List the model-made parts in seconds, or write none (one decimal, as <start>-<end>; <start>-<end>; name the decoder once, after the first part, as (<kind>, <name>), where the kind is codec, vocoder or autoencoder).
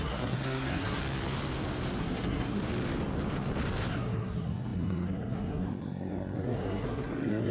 0.0-1.0 (codec, SNAC); 2.0-2.6; 3.9-7.5